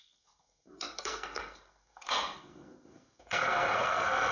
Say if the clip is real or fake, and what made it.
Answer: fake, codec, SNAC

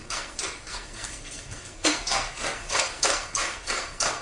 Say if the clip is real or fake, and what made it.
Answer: fake, codec, SNAC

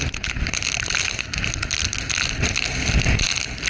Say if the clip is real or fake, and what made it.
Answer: real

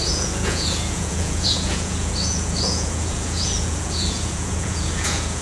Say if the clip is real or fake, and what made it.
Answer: fake, vocoder, Vocos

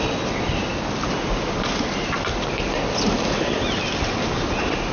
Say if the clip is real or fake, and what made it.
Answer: real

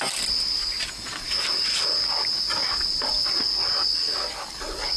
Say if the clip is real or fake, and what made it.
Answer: real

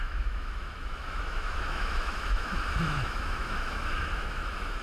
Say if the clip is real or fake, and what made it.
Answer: fake, autoencoder, DAC-VAE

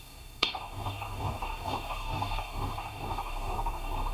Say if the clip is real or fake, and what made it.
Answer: fake, codec, DAC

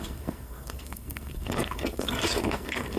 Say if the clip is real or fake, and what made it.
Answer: fake, codec, SNAC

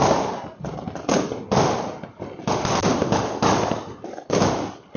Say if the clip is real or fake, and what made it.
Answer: real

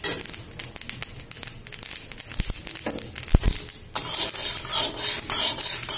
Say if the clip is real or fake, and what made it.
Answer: real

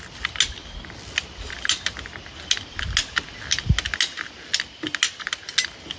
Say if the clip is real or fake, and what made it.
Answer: real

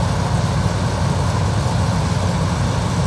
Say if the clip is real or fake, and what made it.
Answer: real